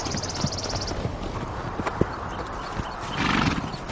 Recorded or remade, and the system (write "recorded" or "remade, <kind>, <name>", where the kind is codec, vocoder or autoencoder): recorded